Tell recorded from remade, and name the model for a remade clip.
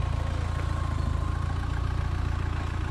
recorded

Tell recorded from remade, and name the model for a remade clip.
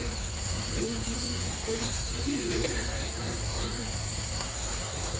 remade, codec, SNAC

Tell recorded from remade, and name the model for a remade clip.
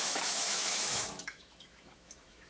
remade, autoencoder, DAC-VAE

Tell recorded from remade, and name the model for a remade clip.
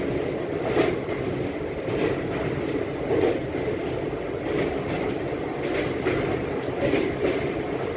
recorded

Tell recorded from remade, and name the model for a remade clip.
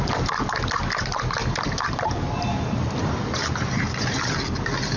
recorded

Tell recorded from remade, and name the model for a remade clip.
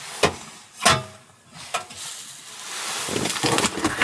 recorded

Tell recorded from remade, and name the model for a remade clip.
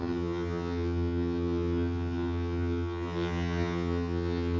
remade, vocoder, HiFi-GAN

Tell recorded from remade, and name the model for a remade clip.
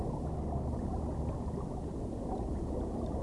recorded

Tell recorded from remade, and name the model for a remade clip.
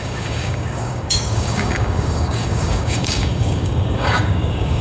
remade, codec, DAC